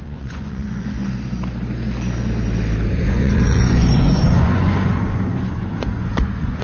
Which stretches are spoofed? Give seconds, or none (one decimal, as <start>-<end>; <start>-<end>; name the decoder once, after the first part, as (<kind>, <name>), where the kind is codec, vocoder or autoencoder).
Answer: 0.0-1.0 (vocoder, Vocos); 2.9-6.6